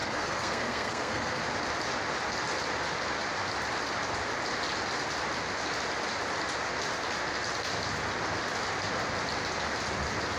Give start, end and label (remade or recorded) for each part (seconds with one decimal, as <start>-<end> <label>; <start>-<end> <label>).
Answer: 0.0-1.4 remade; 1.4-10.4 recorded